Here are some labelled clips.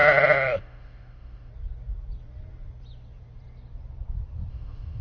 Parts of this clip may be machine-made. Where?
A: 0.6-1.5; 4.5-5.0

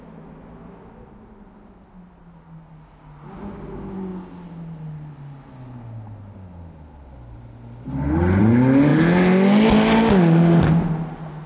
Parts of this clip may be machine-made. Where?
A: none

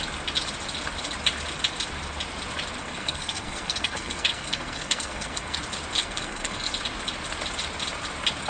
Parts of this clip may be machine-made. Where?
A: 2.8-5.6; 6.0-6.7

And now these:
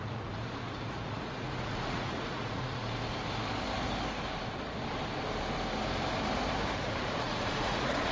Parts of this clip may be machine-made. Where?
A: 0.0-2.8; 7.2-8.1

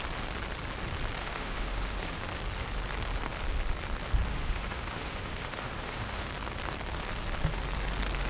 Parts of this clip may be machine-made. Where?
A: 1.2-2.2; 4.3-6.3

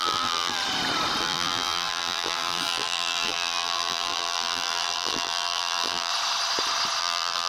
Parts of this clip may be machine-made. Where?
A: 0.0-0.6; 1.2-6.1; 7.0-7.5